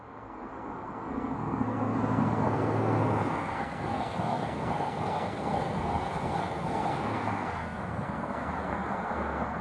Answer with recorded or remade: remade